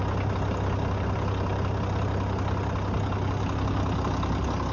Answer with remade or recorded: recorded